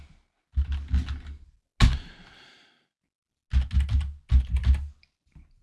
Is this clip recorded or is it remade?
recorded